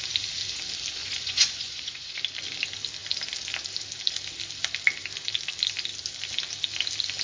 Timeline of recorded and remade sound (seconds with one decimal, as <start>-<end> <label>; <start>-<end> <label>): 0.0-1.0 recorded; 1.0-2.2 remade; 2.2-7.2 recorded